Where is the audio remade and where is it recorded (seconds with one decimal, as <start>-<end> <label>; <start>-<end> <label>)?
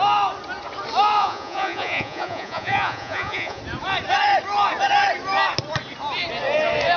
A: 0.0-1.2 recorded; 1.2-3.6 remade; 3.6-7.0 recorded